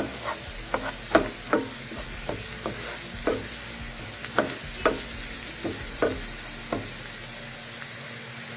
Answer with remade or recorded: recorded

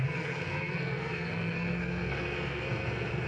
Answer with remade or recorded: remade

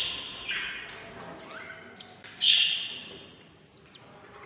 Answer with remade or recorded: recorded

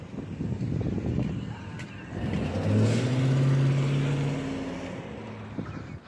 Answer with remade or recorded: recorded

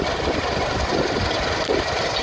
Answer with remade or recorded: recorded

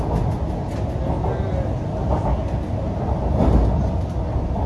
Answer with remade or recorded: recorded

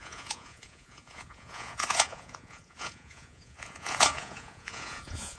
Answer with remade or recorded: remade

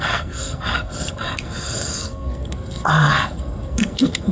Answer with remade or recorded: remade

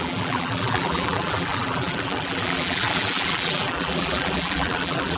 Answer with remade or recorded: remade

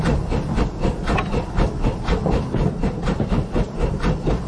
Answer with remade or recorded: recorded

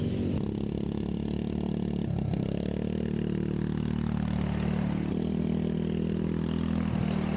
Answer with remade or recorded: recorded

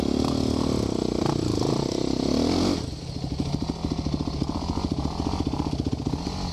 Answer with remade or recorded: recorded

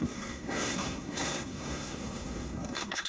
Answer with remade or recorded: remade